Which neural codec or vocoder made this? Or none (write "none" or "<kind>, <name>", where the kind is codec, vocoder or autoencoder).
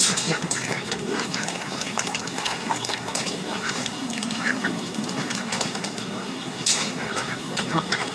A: codec, SNAC